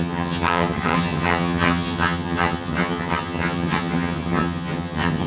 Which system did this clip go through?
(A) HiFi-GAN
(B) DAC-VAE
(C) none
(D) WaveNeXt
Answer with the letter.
A